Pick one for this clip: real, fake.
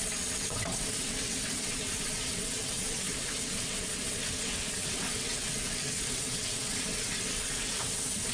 fake